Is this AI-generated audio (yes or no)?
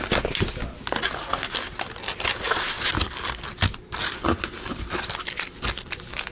no